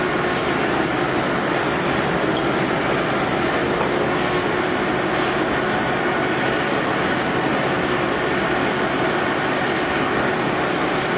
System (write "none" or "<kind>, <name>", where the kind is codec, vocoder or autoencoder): none